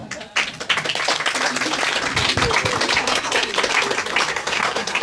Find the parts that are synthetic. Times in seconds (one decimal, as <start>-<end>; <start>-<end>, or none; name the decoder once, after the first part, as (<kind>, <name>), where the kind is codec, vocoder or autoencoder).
3.0-3.5 (codec, SNAC); 4.3-5.0